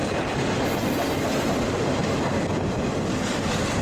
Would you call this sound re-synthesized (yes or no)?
no